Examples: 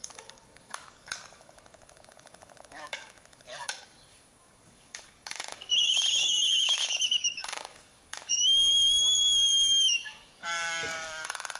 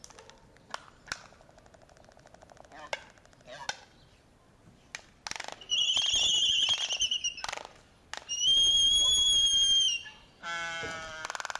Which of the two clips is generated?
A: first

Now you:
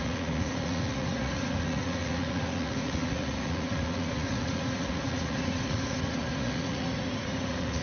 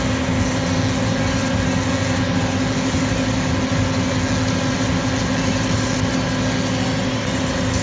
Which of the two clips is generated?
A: first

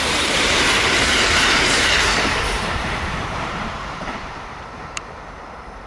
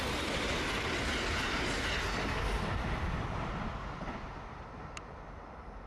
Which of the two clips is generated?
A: first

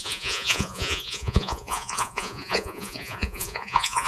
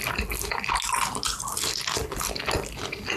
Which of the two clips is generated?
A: first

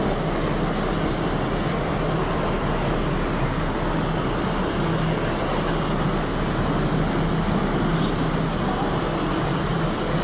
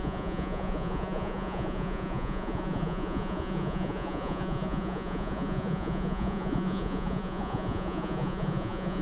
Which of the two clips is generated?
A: second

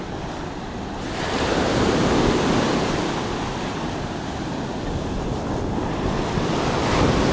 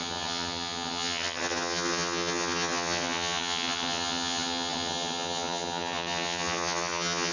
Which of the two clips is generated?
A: second